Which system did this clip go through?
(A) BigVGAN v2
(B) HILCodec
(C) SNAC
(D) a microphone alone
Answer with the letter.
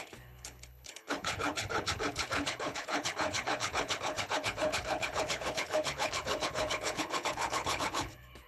B